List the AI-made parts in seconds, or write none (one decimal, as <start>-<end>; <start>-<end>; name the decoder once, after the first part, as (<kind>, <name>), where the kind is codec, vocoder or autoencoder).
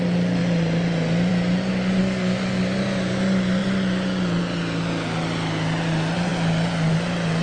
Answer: 2.0-2.6 (codec, SNAC)